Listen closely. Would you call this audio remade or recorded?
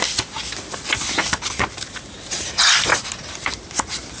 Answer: recorded